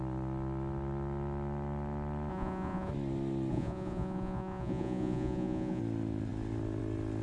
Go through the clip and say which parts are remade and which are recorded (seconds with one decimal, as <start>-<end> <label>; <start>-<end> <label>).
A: 0.0-2.3 recorded; 2.3-2.9 remade; 2.9-3.5 recorded; 3.5-5.8 remade; 5.8-7.2 recorded

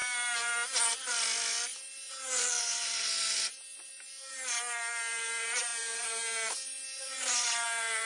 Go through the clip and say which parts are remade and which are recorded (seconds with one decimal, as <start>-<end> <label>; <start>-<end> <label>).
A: 0.0-8.1 recorded

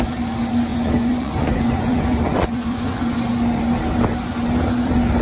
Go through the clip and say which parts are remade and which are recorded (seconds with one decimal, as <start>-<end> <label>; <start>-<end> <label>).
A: 0.0-0.7 recorded; 0.7-3.2 remade; 3.2-5.2 recorded

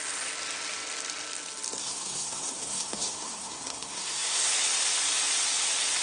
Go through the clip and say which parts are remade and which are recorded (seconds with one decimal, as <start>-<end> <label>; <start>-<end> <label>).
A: 0.0-1.8 recorded; 1.8-4.5 remade; 4.5-6.0 recorded

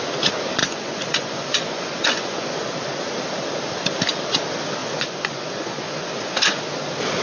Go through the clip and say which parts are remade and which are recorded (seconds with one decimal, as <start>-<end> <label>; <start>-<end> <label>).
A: 0.0-0.6 recorded; 0.6-2.6 remade; 2.6-4.8 recorded; 4.8-6.6 remade; 6.6-7.2 recorded

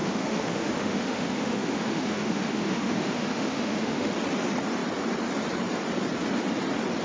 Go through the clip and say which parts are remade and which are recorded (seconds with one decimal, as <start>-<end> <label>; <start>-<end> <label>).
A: 0.0-4.1 remade; 4.1-7.0 recorded

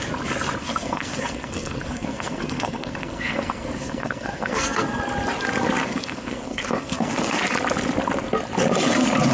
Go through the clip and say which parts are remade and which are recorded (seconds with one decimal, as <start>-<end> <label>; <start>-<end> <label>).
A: 0.0-0.6 recorded; 0.6-5.0 remade; 5.0-5.8 recorded; 5.8-7.4 remade; 7.4-9.3 recorded